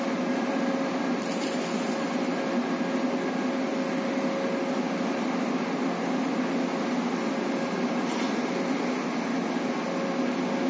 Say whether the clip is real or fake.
real